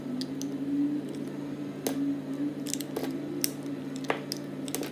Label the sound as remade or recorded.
recorded